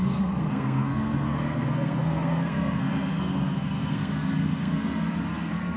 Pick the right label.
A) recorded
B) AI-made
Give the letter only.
B